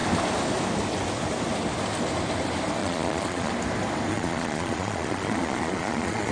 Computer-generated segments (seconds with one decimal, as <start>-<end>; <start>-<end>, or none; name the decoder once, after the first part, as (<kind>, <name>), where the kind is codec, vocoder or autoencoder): 2.8-3.5 (vocoder, Vocos); 4.1-6.3